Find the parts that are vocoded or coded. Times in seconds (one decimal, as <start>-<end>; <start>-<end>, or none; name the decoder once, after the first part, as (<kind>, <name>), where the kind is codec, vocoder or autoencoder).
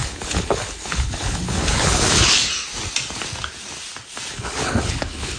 0.0-2.4 (codec, HILCodec); 4.3-5.4